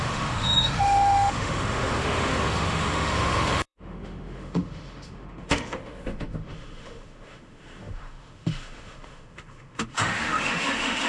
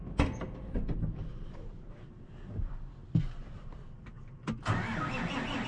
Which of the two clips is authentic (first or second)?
second